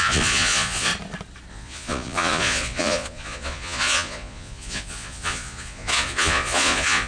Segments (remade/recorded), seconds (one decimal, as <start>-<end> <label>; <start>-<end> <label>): 0.0-0.9 remade; 0.9-1.5 recorded; 1.5-7.1 remade